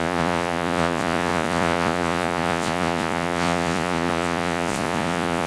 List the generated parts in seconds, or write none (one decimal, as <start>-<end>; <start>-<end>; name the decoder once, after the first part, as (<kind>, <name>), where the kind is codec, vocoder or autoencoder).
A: 0.0-5.5 (vocoder, Vocos)